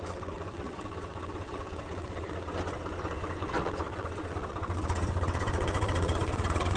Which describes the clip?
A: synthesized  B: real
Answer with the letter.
A